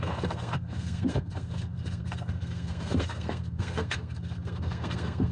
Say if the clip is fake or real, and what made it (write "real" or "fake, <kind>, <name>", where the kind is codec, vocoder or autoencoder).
fake, codec, SNAC